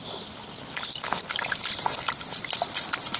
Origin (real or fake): real